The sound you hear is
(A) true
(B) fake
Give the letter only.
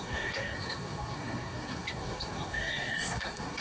B